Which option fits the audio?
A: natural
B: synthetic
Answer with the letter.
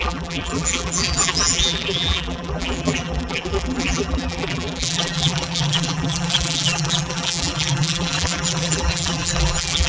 B